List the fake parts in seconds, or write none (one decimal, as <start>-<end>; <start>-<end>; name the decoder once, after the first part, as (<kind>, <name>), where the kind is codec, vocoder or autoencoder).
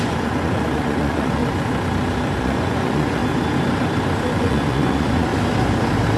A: 0.0-1.4 (vocoder, Vocos); 2.4-3.2; 4.4-5.3